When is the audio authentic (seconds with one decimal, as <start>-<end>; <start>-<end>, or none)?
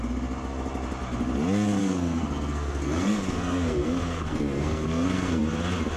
0.0-1.8; 5.4-6.0